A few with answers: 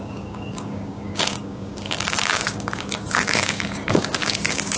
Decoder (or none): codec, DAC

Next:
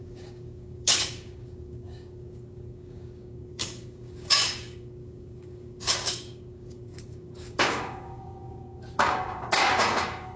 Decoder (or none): codec, DAC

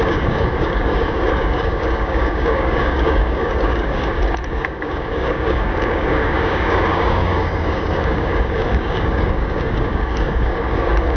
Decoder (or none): codec, DAC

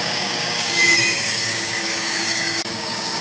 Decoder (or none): codec, DAC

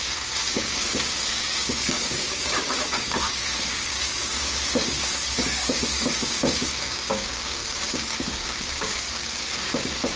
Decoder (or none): codec, DAC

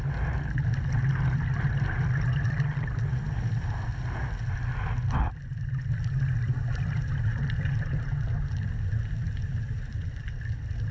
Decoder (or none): none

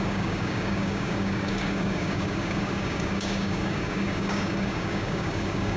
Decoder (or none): codec, DAC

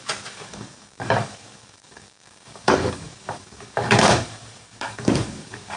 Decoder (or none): codec, DAC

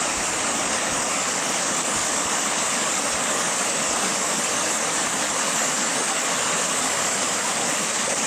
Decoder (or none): codec, DAC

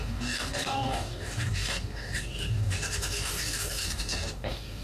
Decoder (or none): codec, DAC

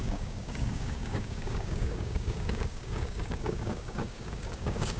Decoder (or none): codec, DAC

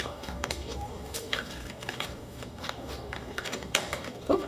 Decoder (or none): codec, DAC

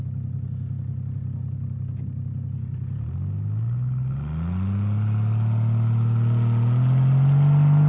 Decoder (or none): none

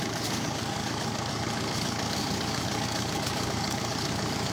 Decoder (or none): codec, DAC